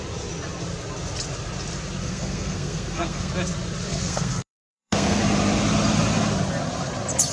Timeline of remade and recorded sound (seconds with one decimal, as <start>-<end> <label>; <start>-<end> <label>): 0.0-2.0 recorded; 2.0-3.3 remade; 3.3-3.9 recorded; 3.9-5.2 remade; 5.2-7.3 recorded